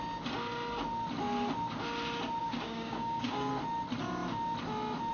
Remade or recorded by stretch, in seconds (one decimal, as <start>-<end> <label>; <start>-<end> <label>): 0.0-2.4 recorded; 2.4-3.5 remade; 3.5-5.1 recorded